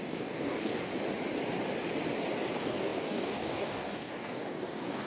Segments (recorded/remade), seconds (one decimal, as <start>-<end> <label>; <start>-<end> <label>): 0.0-0.9 remade; 0.9-2.5 recorded; 2.5-5.1 remade